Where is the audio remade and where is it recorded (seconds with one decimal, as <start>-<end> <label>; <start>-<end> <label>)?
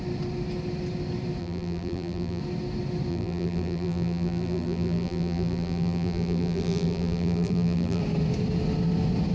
0.0-1.4 recorded; 1.4-2.4 remade; 2.4-3.1 recorded; 3.1-8.0 remade; 8.0-9.3 recorded